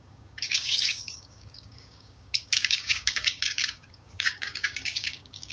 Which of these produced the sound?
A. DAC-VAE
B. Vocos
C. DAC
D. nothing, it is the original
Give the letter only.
C